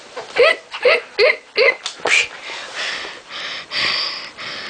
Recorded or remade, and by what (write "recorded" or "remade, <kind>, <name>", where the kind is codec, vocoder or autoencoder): recorded